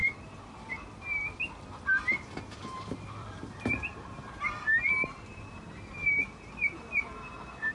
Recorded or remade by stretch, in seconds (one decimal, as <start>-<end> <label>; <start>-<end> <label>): 0.0-4.6 remade; 4.6-7.7 recorded